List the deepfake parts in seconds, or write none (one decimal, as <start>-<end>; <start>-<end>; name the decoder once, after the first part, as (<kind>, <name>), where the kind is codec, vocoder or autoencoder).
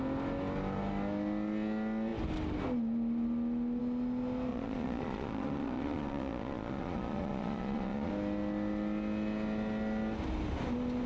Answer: 4.5-8.1 (vocoder, Vocos)